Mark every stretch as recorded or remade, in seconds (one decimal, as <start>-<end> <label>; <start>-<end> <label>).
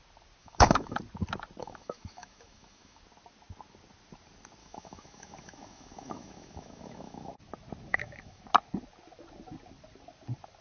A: 0.0-0.4 recorded; 0.4-1.0 remade; 1.0-1.6 recorded; 1.6-3.0 remade; 3.0-4.6 recorded; 4.6-7.3 remade; 7.3-7.9 recorded; 7.9-8.4 remade; 8.4-10.6 recorded